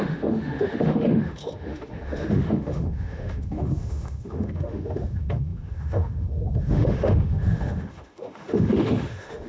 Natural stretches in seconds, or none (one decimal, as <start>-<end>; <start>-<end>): none